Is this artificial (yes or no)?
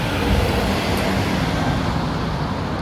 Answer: no